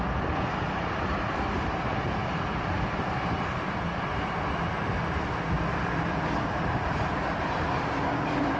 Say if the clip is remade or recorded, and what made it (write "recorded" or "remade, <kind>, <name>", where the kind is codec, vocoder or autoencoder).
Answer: recorded